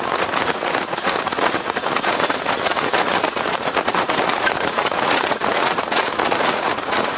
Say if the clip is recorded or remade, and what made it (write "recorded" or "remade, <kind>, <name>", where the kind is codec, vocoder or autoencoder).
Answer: remade, vocoder, Vocos